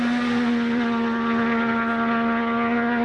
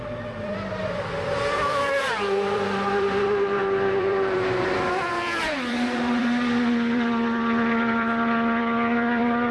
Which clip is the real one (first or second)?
first